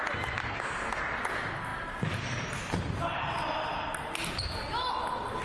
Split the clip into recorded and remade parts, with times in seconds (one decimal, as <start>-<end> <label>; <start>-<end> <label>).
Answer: 0.0-0.4 recorded; 0.4-1.0 remade; 1.0-5.4 recorded